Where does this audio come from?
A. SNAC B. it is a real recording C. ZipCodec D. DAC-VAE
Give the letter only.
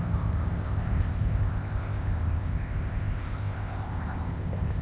C